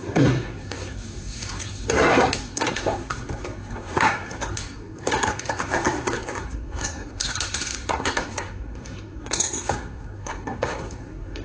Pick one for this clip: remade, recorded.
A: remade